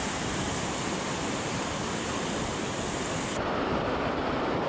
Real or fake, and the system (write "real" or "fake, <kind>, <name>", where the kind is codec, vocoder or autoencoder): fake, vocoder, BigVGAN v2